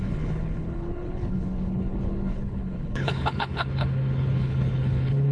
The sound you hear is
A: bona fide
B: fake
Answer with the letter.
B